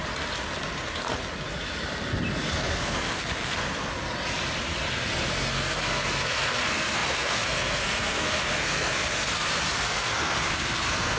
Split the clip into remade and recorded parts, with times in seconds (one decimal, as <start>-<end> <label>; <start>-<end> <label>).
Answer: 0.0-2.5 recorded; 2.5-3.9 remade; 3.9-5.5 recorded; 5.5-11.2 remade